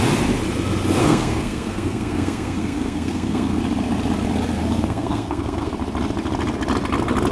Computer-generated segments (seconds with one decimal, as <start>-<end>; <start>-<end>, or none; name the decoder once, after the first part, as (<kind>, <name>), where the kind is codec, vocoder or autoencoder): 1.0-3.6 (codec, SNAC); 4.6-5.7